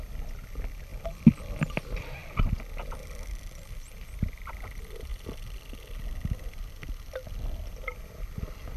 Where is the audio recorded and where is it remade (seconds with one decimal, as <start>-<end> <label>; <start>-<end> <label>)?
0.0-8.8 recorded